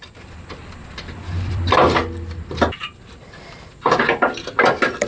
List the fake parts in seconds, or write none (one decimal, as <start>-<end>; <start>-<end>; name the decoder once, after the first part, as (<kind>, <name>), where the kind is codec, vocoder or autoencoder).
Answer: 0.0-2.0 (vocoder, BigVGAN v2)